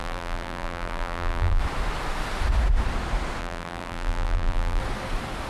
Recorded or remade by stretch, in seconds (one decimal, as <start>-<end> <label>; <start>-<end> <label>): 0.0-1.6 remade; 1.6-3.4 recorded; 3.4-4.8 remade; 4.8-5.5 recorded